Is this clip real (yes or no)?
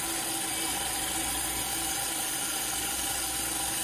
yes